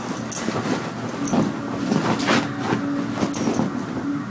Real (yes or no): yes